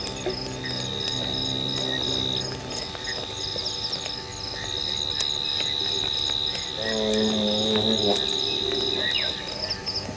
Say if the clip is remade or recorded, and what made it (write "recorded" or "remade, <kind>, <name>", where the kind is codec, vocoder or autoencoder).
recorded